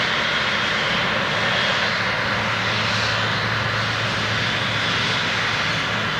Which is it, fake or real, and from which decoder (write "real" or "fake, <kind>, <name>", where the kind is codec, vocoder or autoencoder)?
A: real